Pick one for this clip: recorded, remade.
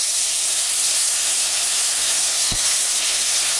remade